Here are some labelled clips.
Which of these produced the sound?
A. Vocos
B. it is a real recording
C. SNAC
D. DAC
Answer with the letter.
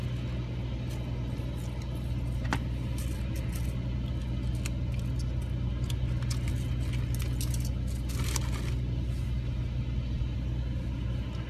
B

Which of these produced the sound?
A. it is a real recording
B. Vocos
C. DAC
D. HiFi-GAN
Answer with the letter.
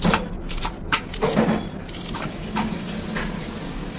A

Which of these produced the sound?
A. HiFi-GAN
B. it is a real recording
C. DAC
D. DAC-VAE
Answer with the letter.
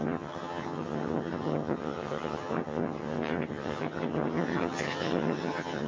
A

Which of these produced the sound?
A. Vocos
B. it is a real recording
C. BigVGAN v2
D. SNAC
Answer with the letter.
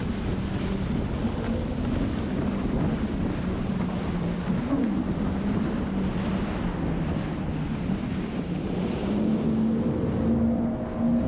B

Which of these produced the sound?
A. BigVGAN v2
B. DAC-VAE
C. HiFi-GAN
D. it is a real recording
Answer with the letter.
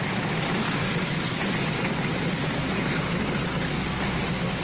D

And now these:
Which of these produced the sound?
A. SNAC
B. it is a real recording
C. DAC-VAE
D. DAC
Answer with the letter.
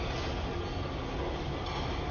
B